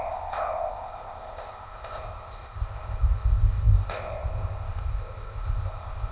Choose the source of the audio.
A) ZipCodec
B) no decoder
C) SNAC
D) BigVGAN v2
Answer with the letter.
A